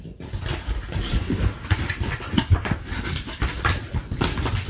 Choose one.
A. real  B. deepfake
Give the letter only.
A